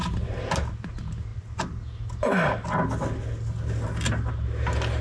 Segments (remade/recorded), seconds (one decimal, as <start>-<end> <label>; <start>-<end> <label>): 0.0-5.0 recorded